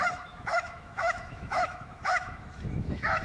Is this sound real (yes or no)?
no